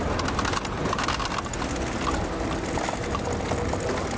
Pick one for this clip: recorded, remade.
recorded